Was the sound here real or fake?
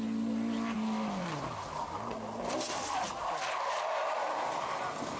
real